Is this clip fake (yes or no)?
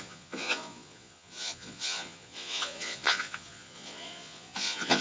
yes